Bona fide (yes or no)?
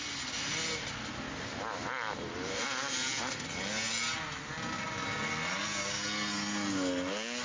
yes